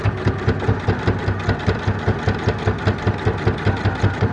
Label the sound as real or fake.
real